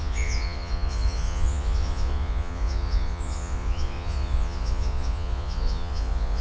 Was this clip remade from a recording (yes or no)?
yes